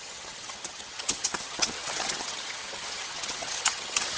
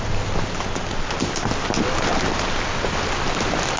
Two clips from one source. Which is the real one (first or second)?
second